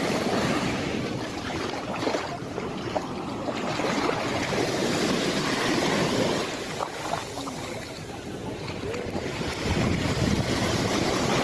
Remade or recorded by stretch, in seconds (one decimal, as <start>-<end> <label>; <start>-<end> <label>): 0.0-11.4 recorded